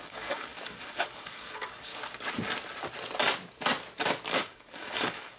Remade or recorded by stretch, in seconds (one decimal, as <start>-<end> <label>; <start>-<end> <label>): 0.0-1.9 remade; 1.9-4.3 recorded; 4.3-5.4 remade